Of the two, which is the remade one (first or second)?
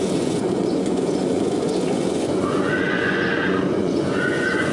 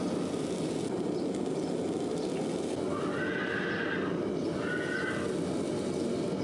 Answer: first